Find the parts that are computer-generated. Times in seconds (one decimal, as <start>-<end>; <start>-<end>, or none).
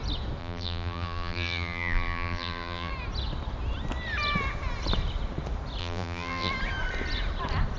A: 0.4-2.9; 5.8-6.5